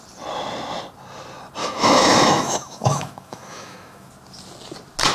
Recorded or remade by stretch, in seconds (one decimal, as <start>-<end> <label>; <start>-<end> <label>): 0.0-1.6 recorded; 1.6-4.1 remade; 4.1-5.1 recorded